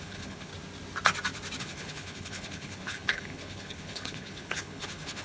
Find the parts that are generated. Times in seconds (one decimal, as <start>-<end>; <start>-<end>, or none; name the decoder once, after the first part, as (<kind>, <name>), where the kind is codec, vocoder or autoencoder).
0.0-0.5 (codec, HILCodec); 1.6-5.2